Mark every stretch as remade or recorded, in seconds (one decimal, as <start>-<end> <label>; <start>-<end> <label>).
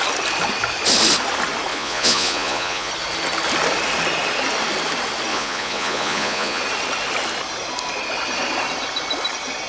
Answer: 0.0-1.7 recorded; 1.7-2.9 remade; 2.9-5.3 recorded; 5.3-6.6 remade; 6.6-9.7 recorded